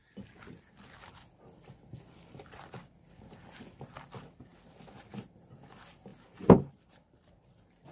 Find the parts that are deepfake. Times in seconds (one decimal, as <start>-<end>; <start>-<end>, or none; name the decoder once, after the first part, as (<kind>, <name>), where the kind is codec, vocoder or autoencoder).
1.1-4.5 (vocoder, BigVGAN v2); 5.4-6.1; 6.9-7.9